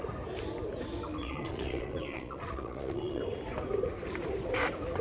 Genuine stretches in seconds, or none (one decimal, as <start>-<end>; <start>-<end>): 0.0-1.2; 3.2-5.0